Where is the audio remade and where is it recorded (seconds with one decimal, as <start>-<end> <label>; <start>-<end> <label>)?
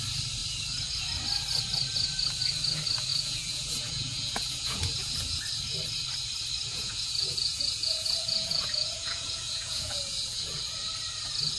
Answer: 0.0-3.1 recorded; 3.1-5.4 remade; 5.4-6.7 recorded; 6.7-10.6 remade; 10.6-11.6 recorded